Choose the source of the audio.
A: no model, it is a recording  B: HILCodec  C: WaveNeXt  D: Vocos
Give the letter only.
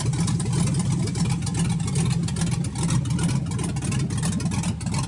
A